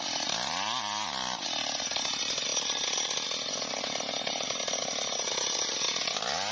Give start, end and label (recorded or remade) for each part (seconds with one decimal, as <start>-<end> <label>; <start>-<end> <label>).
0.0-6.5 recorded